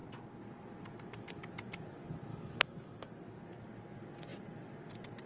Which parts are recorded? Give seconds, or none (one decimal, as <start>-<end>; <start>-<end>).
0.0-2.3; 3.1-5.3